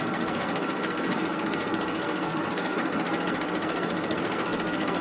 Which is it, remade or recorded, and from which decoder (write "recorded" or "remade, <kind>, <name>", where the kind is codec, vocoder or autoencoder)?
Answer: remade, codec, SNAC